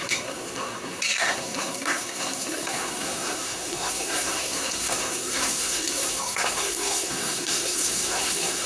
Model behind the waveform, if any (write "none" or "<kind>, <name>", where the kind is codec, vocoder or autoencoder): codec, SNAC